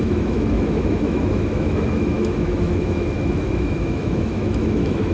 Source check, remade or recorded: remade